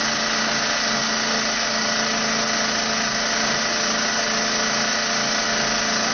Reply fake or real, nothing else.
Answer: real